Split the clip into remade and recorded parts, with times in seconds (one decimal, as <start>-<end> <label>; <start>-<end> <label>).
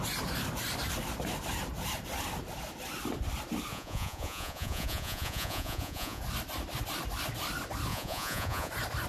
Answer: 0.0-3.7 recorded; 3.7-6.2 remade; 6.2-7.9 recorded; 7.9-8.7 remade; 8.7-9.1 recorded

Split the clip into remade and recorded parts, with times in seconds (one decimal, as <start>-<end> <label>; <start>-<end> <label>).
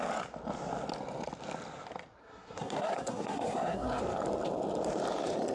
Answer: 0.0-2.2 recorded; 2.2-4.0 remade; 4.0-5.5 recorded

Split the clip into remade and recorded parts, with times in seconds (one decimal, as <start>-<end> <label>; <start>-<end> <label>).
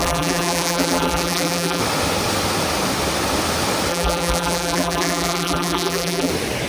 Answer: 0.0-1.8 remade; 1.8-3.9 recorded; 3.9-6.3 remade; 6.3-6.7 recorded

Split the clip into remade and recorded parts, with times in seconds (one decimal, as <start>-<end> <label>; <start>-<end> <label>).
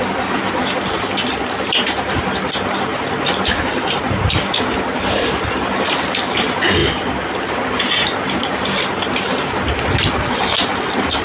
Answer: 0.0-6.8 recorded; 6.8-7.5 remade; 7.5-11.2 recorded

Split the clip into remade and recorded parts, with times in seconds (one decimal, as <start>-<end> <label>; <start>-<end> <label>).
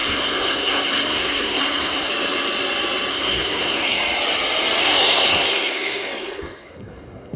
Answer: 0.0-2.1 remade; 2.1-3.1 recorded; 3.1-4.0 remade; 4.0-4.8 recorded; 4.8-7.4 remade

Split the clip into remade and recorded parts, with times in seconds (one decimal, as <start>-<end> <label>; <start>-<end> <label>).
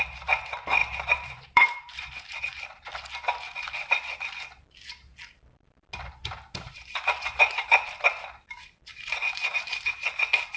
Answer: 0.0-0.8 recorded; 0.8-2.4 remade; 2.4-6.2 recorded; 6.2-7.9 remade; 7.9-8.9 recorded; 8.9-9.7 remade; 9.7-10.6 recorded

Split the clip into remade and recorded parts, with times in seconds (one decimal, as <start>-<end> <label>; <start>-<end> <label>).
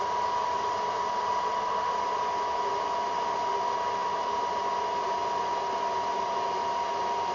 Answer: 0.0-7.3 recorded